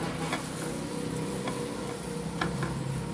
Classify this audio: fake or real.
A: real